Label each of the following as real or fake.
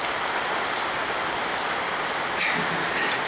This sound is real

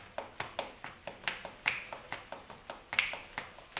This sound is real